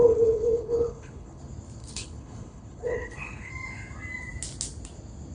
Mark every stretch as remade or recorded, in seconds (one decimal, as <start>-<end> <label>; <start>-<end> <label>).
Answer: 0.0-1.4 remade; 1.4-1.8 recorded; 1.8-3.5 remade; 3.5-5.3 recorded